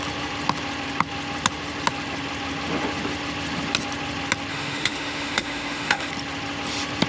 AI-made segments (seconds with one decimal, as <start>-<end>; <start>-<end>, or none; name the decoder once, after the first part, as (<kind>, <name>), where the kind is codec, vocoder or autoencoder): 4.5-6.1 (autoencoder, DAC-VAE)